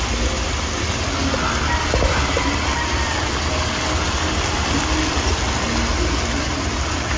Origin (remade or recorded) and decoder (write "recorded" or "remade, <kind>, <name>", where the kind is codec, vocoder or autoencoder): recorded